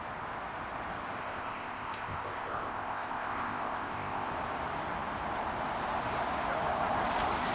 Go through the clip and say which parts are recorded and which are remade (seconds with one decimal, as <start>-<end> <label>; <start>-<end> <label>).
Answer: 0.0-1.2 recorded; 1.2-4.3 remade; 4.3-7.5 recorded